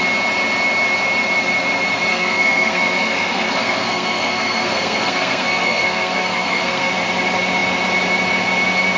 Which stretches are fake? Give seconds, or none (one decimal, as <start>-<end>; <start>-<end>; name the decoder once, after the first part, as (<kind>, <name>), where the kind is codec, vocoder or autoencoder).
2.1-6.9 (codec, SNAC)